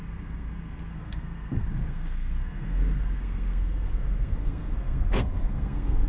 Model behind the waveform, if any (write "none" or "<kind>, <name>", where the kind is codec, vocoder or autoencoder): codec, SNAC